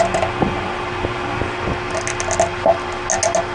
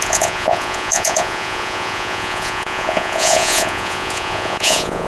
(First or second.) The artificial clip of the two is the second